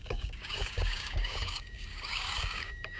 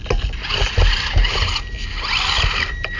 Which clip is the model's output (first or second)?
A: first